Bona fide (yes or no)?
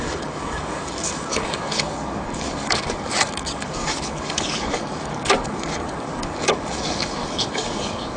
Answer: no